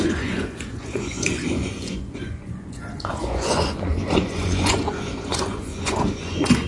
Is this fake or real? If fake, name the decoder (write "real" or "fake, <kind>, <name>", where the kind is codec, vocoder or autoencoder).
fake, vocoder, Vocos